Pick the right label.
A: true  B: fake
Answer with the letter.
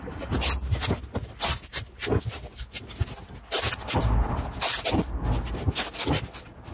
A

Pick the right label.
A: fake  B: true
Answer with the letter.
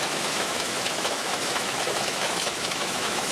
A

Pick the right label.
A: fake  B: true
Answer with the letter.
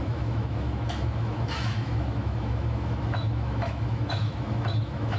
A